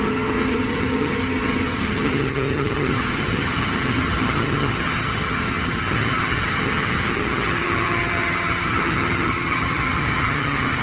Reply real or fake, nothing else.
fake